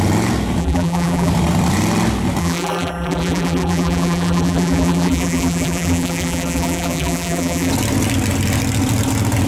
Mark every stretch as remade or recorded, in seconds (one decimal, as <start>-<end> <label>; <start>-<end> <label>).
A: 0.0-0.6 recorded; 0.6-1.3 remade; 1.3-2.4 recorded; 2.4-7.7 remade; 7.7-9.5 recorded